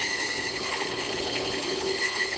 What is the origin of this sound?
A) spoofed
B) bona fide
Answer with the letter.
A